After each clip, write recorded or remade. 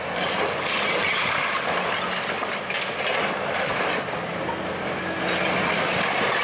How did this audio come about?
recorded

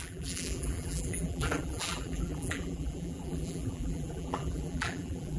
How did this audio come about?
remade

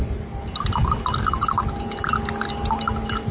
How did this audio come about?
recorded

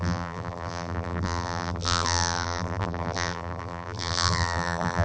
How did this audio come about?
remade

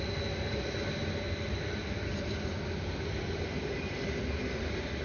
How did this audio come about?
recorded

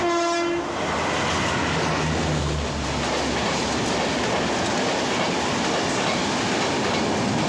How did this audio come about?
recorded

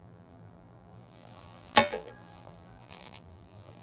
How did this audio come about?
remade